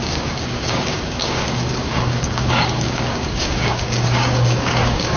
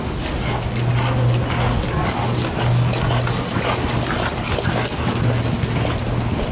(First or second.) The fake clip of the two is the first